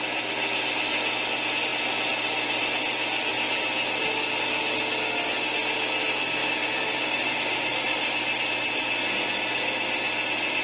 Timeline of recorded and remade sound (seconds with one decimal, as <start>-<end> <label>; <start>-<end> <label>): 0.0-6.4 recorded; 6.4-8.4 remade; 8.4-10.6 recorded